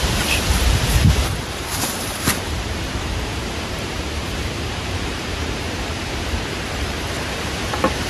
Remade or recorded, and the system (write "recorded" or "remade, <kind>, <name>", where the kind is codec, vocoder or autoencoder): remade, vocoder, BigVGAN v2